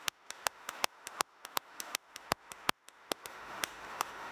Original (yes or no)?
no